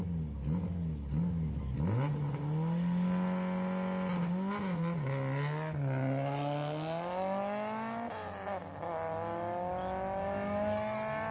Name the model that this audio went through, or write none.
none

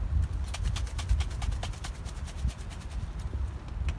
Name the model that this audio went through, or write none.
none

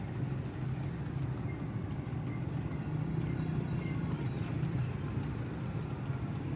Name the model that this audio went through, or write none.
none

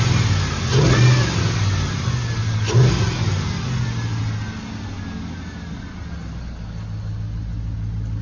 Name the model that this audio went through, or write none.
none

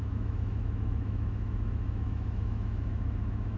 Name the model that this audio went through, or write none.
autoencoder, DAC-VAE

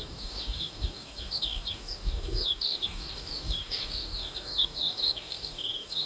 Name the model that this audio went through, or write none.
codec, DAC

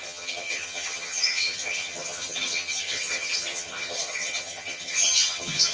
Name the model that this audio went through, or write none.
vocoder, HiFi-GAN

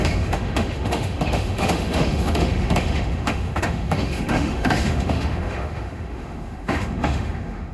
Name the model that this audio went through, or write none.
autoencoder, DAC-VAE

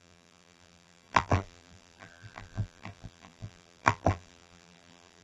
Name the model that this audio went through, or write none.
vocoder, BigVGAN v2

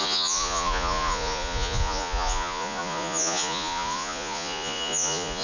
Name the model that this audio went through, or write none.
vocoder, Vocos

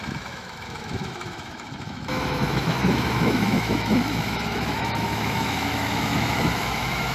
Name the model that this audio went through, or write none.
autoencoder, DAC-VAE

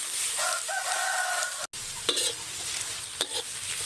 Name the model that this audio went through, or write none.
none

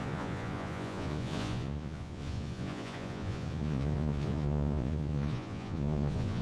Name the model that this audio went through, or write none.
vocoder, Vocos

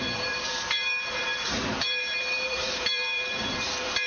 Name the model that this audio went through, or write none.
vocoder, BigVGAN v2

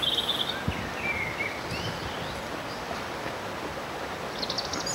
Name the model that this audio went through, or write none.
none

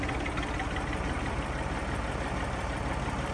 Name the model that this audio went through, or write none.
none